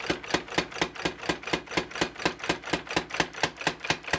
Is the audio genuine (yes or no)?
yes